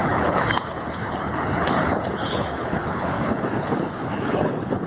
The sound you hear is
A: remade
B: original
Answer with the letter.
A